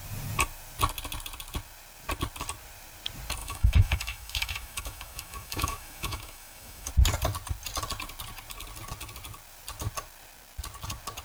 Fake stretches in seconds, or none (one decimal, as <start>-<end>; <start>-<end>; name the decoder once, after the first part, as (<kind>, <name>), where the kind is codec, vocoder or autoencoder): 3.4-6.9 (autoencoder, DAC-VAE)